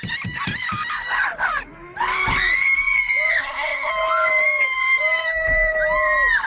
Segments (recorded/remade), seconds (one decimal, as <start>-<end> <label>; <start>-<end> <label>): 0.0-3.3 recorded; 3.3-3.9 remade; 3.9-6.5 recorded

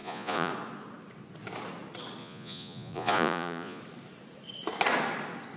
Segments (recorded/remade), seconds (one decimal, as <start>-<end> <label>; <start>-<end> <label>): 0.0-0.5 remade; 0.5-2.2 recorded; 2.2-3.8 remade; 3.8-5.6 recorded